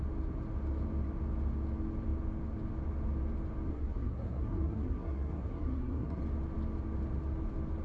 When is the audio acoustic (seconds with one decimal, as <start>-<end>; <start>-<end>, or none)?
0.0-3.7; 6.2-7.8